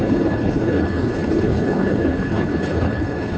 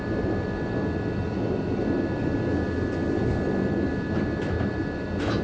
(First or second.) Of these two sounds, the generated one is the first